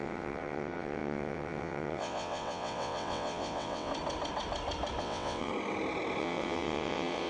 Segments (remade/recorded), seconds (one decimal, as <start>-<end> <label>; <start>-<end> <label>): 0.0-3.9 remade; 3.9-5.0 recorded; 5.0-5.5 remade; 5.5-6.2 recorded; 6.2-7.3 remade